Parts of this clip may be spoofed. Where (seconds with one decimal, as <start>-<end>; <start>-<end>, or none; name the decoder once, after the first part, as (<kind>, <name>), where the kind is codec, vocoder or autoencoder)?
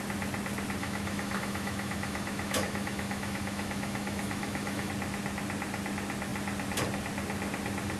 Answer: 0.8-4.9 (autoencoder, DAC-VAE)